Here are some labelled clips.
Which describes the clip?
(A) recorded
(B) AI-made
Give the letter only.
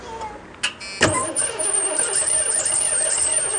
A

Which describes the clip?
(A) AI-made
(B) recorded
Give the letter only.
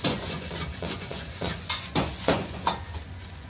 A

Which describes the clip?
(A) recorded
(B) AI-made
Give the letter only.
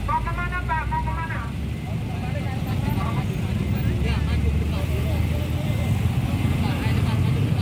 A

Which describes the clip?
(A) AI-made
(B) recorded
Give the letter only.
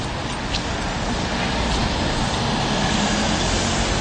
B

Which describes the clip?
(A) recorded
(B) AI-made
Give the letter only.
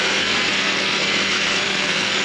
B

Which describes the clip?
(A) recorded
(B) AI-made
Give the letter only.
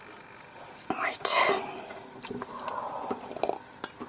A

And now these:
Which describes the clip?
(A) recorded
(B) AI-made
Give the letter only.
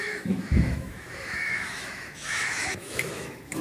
B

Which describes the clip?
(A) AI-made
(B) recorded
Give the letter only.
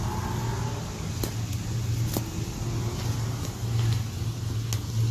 B